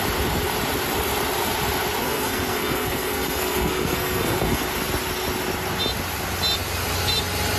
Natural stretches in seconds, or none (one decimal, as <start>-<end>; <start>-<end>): 0.0-2.0; 4.7-7.6